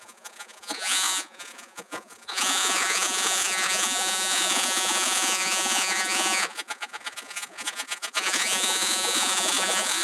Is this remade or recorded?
remade